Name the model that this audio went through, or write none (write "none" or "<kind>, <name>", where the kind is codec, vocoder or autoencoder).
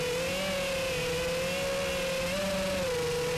none